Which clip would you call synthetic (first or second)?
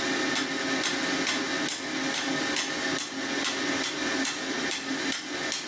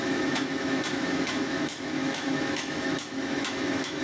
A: second